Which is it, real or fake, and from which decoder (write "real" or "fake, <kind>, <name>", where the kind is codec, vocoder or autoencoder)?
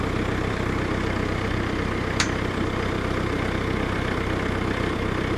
fake, vocoder, BigVGAN v2